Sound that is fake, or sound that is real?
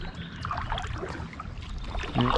real